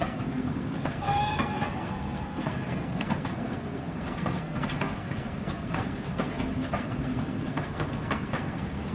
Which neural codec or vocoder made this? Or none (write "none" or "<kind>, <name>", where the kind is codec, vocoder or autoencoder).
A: codec, SNAC